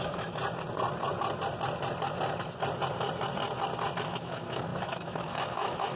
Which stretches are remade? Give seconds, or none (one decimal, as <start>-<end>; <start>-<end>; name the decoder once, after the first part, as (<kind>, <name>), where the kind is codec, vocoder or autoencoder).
0.0-0.4 (autoencoder, DAC-VAE); 4.0-6.0